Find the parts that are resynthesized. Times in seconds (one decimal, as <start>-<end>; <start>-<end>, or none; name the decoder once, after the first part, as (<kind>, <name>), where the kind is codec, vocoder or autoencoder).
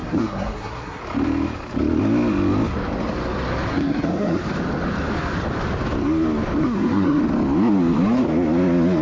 0.0-1.0 (codec, SNAC); 3.7-4.4; 6.6-7.2